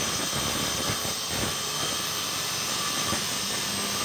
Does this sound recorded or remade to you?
recorded